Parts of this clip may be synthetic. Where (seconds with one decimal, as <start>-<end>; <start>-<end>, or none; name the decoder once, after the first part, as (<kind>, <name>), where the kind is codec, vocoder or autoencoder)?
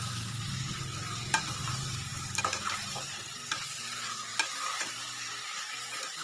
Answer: 0.0-6.2 (vocoder, BigVGAN v2)